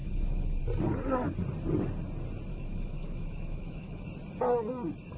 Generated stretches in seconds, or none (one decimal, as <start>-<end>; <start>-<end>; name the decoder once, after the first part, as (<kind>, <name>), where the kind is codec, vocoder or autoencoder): 0.0-0.6 (autoencoder, DAC-VAE); 2.5-4.0